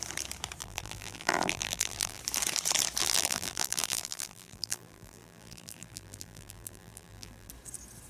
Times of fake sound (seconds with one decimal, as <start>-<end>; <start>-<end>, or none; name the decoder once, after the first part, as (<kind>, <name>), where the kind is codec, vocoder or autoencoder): 0.6-2.2 (vocoder, BigVGAN v2); 3.0-7.5